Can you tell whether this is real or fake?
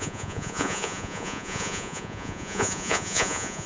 fake